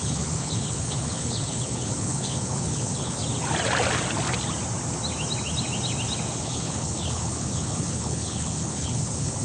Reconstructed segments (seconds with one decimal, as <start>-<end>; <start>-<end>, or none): 0.0-3.2; 6.4-9.4